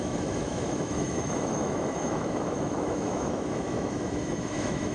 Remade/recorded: remade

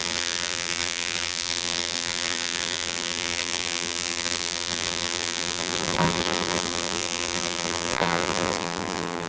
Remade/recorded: remade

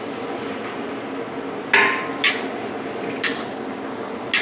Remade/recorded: recorded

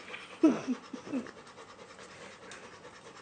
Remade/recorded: recorded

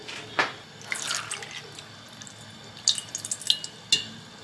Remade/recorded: recorded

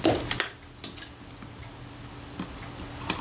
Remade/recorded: recorded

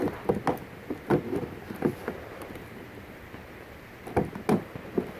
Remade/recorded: recorded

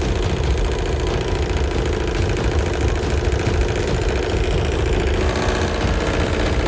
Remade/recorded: recorded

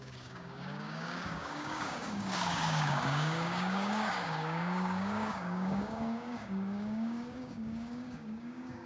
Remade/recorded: remade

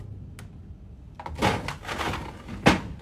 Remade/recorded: recorded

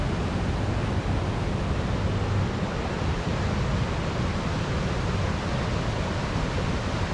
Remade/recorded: recorded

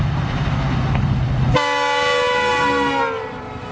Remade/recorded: recorded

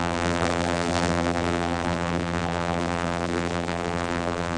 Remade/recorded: remade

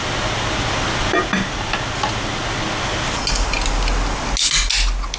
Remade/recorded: recorded